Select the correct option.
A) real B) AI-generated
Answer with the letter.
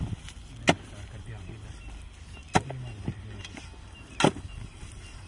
A